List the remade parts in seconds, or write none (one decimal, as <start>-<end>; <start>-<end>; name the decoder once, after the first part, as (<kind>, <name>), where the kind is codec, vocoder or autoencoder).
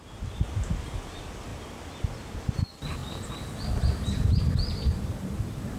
none